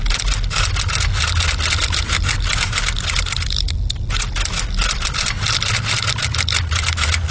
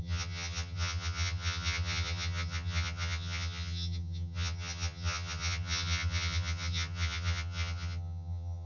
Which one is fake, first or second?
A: second